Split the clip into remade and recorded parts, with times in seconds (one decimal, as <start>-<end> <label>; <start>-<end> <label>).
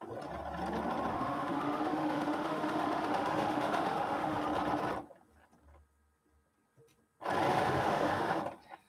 0.0-1.1 recorded; 1.1-4.4 remade; 4.4-7.5 recorded; 7.5-8.4 remade; 8.4-8.9 recorded